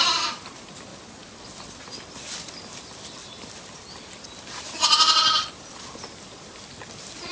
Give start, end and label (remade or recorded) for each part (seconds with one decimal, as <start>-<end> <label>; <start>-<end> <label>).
0.0-7.3 recorded